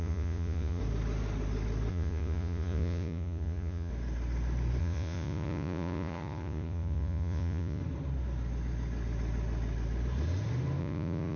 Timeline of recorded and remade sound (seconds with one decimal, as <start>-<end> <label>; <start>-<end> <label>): 0.0-0.8 remade; 0.8-1.9 recorded; 1.9-3.9 remade; 3.9-4.8 recorded; 4.8-7.8 remade; 7.8-10.8 recorded; 10.8-11.4 remade